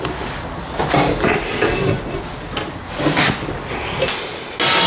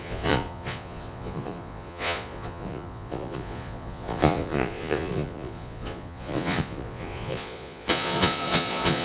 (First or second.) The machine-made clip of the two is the second